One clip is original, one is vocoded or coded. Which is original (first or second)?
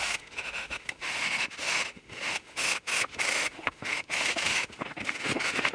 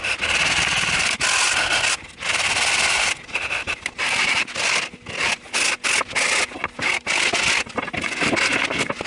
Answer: second